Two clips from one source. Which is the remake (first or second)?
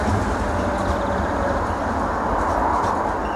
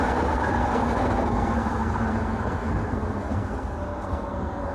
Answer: second